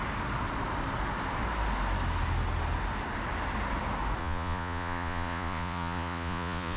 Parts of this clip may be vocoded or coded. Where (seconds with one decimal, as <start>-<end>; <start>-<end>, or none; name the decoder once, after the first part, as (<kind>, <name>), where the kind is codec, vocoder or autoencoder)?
4.2-6.8 (vocoder, Vocos)